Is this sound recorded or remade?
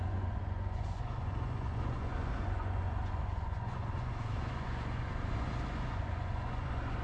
remade